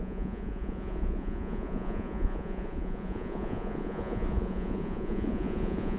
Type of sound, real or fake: fake